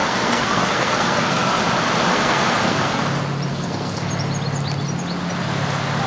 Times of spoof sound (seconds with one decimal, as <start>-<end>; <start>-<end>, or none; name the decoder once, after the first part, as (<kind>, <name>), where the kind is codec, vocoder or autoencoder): 0.0-1.6 (codec, SNAC); 2.1-3.0; 3.5-4.1